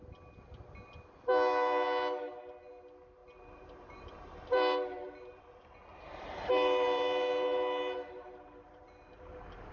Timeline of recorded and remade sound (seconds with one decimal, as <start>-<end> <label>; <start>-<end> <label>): 0.0-3.2 recorded; 3.2-5.4 remade; 5.4-5.9 recorded; 5.9-9.7 remade